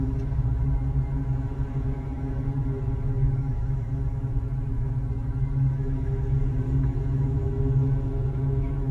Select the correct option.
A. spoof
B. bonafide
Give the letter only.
A